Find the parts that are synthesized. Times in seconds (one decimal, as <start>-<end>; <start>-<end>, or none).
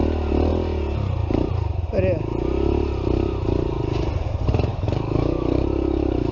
4.7-6.3